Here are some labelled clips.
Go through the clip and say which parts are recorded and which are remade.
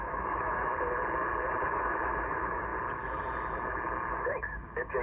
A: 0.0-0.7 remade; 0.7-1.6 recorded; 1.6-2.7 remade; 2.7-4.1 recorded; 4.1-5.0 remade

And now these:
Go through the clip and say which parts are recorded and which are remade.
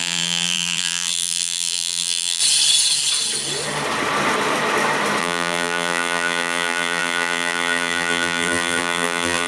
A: 0.0-2.4 remade; 2.4-5.2 recorded; 5.2-9.5 remade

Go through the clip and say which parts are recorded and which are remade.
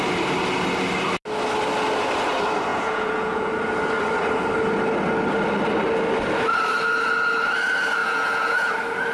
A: 0.0-2.7 recorded; 2.7-3.5 remade; 3.5-8.0 recorded; 8.0-8.7 remade; 8.7-9.1 recorded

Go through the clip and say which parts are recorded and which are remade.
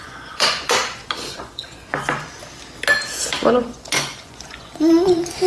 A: 0.0-2.4 remade; 2.4-3.6 recorded; 3.6-5.5 remade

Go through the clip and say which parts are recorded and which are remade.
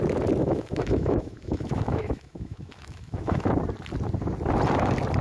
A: 0.0-0.4 recorded; 0.4-3.5 remade; 3.5-5.2 recorded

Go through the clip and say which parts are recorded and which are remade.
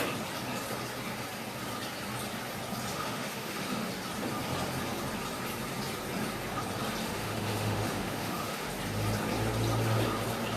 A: 0.0-2.9 recorded; 2.9-3.9 remade; 3.9-7.0 recorded; 7.0-8.7 remade; 8.7-10.6 recorded